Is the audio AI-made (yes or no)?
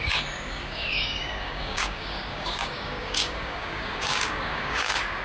yes